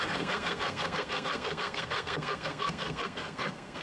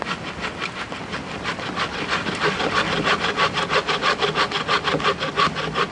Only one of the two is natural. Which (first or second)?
second